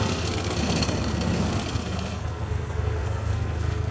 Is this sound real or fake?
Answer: fake